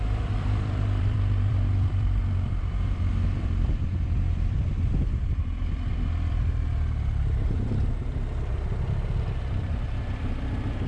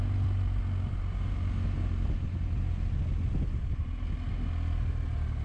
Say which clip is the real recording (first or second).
second